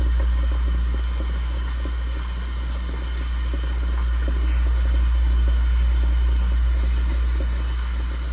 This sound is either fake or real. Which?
real